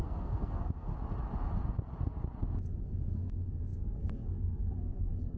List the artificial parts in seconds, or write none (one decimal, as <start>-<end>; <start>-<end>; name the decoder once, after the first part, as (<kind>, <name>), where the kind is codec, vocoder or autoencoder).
0.0-0.9 (codec, SNAC); 2.8-5.4